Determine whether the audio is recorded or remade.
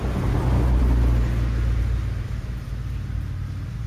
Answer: recorded